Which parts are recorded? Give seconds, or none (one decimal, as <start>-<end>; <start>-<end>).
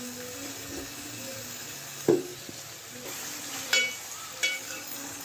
2.3-4.5